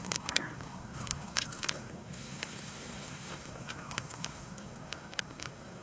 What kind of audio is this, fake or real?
fake